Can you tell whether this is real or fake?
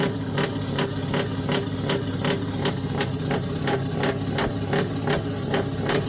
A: real